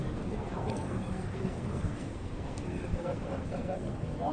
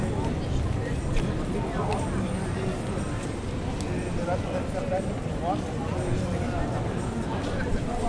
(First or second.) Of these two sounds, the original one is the second